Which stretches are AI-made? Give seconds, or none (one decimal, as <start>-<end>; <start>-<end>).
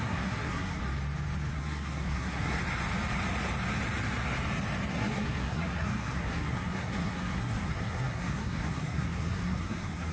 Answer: 0.0-0.8; 1.5-2.6; 4.9-10.1